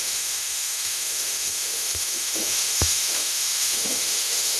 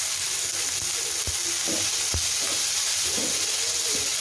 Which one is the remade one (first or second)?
first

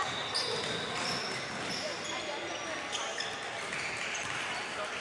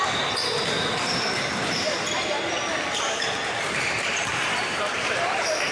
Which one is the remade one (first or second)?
second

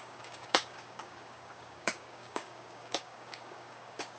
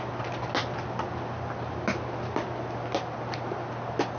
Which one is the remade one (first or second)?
first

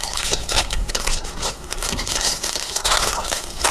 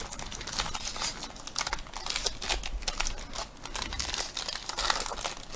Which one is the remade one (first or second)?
first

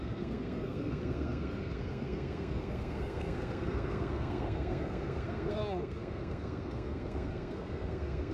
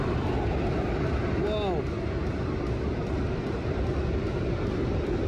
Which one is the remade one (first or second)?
first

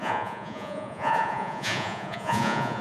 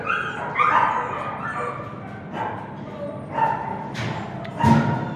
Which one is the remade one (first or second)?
first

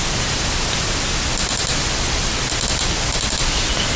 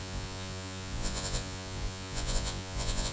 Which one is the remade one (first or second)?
second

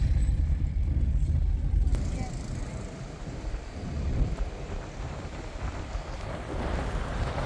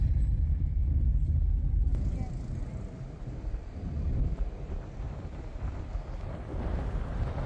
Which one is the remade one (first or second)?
first